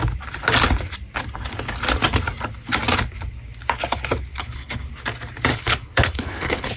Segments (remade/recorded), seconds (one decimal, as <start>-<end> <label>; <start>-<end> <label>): 0.0-4.3 recorded; 4.3-4.9 remade; 4.9-5.5 recorded; 5.5-6.8 remade